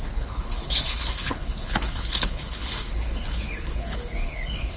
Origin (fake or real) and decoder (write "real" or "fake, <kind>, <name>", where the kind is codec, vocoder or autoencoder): fake, codec, HILCodec